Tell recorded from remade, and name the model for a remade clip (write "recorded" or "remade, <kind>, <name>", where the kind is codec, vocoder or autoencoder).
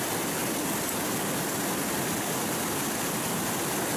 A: recorded